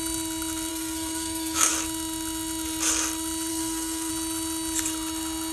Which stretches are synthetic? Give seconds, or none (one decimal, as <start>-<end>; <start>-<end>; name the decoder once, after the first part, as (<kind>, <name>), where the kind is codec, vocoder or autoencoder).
0.7-1.7 (codec, SNAC); 3.5-4.1